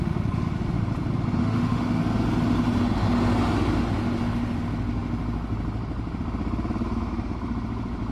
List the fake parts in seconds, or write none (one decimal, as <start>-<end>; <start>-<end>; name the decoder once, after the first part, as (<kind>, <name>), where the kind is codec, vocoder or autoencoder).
1.4-2.0 (autoencoder, DAC-VAE)